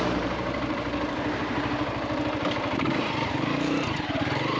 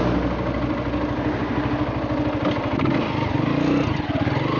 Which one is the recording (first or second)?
second